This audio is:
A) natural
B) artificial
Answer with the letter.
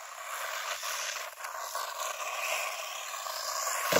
A